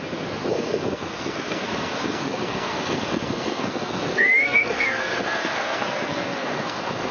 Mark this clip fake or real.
fake